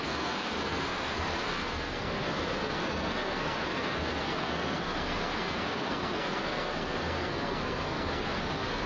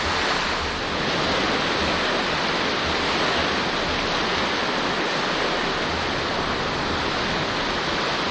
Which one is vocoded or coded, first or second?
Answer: first